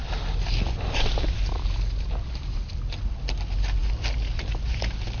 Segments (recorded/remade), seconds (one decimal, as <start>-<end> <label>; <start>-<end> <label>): 0.0-5.2 recorded